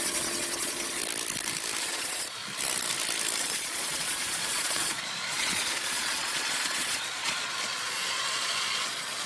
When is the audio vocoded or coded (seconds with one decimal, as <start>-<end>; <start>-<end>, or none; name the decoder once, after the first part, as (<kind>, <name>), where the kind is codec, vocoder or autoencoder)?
0.0-1.0 (vocoder, Vocos); 1.8-2.4; 3.4-9.3